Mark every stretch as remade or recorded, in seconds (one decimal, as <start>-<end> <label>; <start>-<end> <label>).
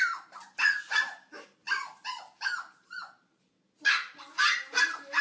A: 0.0-5.2 recorded